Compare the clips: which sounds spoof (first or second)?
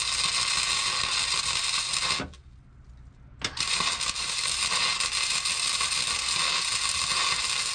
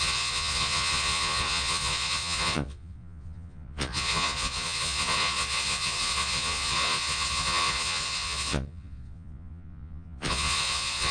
second